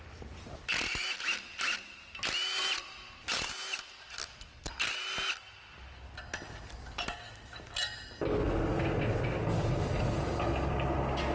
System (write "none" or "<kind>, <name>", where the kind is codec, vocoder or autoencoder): none